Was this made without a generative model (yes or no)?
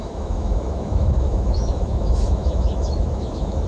no